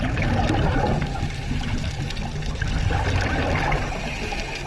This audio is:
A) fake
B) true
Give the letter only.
B